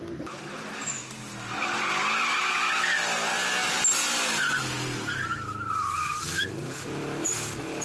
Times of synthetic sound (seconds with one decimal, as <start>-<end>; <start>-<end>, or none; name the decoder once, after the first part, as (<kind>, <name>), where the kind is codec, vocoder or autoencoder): none